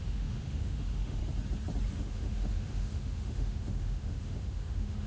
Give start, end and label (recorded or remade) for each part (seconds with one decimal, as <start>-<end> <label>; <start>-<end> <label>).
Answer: 0.0-1.2 remade; 1.2-1.9 recorded; 1.9-5.1 remade